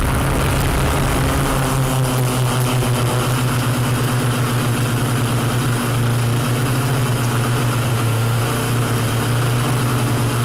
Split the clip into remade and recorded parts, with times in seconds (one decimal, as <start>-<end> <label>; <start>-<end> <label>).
0.0-7.9 recorded; 7.9-8.4 remade; 8.4-10.4 recorded

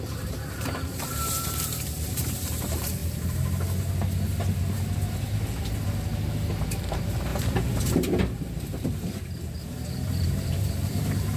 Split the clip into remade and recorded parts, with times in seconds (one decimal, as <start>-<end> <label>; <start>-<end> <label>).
0.0-3.0 remade; 3.0-6.8 recorded; 6.8-11.4 remade

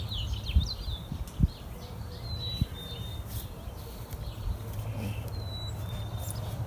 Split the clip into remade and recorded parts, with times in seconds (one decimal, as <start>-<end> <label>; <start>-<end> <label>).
0.0-6.7 recorded